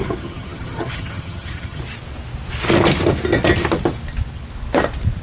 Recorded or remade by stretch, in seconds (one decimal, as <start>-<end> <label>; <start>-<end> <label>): 0.0-1.8 remade; 1.8-5.2 recorded